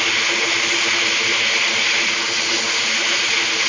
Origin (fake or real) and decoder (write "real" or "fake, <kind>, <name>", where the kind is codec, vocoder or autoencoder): real